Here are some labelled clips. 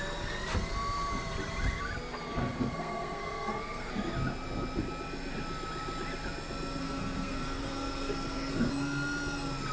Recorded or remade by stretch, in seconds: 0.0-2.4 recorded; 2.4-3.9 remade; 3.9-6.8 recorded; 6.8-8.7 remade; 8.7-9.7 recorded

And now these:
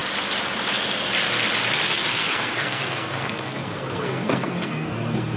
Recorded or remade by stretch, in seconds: 0.0-2.1 recorded; 2.1-5.4 remade

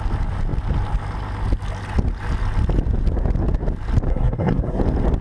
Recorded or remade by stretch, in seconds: 0.0-4.1 recorded; 4.1-4.8 remade; 4.8-5.2 recorded

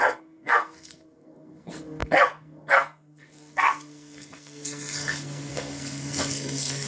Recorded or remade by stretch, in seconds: 0.0-6.9 remade